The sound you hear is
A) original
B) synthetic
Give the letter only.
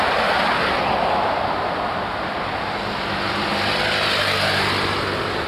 A